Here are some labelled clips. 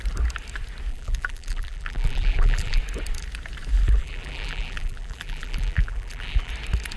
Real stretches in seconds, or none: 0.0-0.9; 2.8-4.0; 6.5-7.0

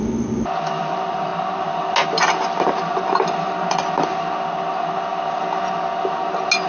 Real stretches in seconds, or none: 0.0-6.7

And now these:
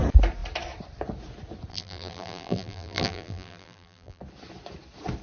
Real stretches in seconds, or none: 0.0-1.7; 4.2-5.2

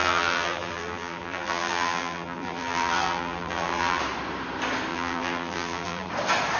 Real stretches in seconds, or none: 4.0-4.9; 6.1-6.6

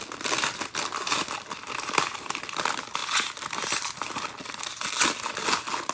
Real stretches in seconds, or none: 0.0-3.0; 4.6-5.9